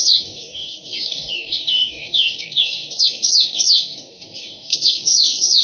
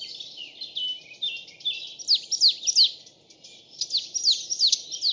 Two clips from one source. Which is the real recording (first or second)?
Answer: second